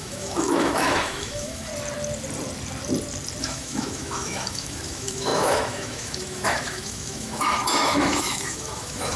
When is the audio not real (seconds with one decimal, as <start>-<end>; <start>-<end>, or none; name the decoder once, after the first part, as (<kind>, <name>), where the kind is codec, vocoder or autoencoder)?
0.0-1.7 (autoencoder, DAC-VAE); 3.4-9.2